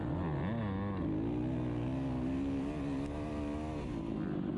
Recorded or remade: recorded